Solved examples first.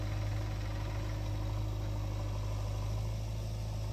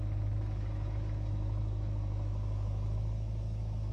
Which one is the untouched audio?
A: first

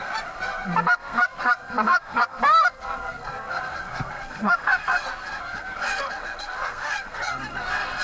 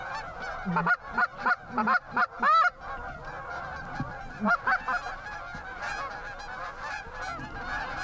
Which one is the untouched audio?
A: second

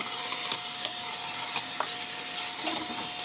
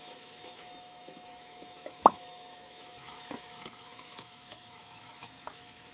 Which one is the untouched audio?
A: first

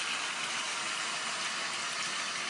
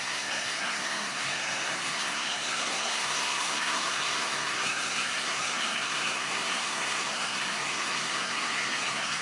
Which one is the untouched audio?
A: first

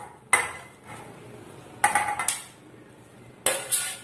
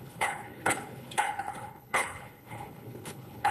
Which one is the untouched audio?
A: first